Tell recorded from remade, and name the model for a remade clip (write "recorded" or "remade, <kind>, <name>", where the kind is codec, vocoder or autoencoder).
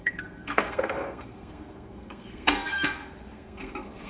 remade, codec, SNAC